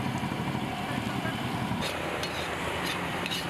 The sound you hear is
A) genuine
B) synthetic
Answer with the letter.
B